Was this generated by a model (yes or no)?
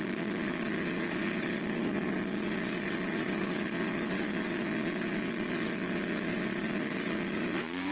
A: yes